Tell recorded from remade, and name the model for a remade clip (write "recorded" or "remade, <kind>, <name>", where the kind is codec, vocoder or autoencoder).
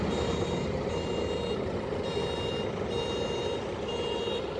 recorded